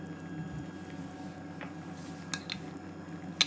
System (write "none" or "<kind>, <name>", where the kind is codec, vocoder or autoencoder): none